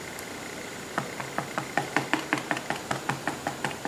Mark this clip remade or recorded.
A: recorded